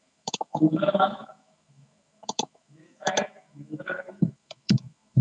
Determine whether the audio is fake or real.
fake